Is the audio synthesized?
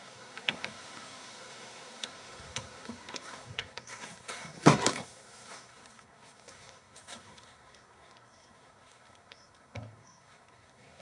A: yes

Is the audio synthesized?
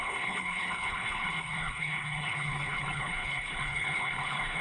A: yes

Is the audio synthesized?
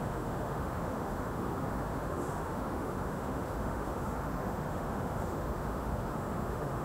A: yes